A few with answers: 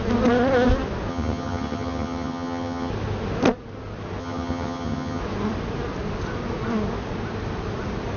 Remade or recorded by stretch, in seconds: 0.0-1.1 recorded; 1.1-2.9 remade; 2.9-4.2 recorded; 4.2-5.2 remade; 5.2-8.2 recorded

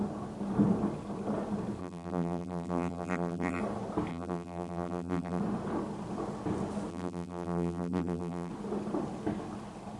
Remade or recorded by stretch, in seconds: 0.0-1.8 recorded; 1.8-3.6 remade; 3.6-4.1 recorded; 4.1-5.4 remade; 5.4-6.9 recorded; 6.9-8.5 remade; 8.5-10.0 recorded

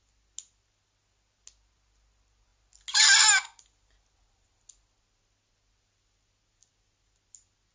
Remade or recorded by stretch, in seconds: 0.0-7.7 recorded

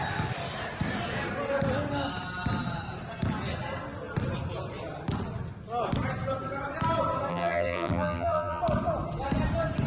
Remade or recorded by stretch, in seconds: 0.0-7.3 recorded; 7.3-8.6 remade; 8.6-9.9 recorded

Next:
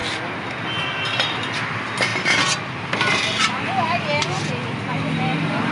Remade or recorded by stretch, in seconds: 0.0-5.7 recorded

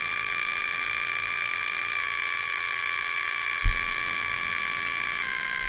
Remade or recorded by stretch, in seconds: 0.0-5.7 remade

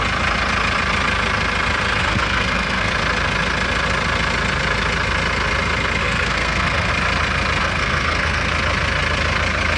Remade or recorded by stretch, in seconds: 0.0-2.0 recorded; 2.0-2.9 remade; 2.9-6.0 recorded; 6.0-6.9 remade; 6.9-7.6 recorded; 7.6-8.5 remade; 8.5-9.8 recorded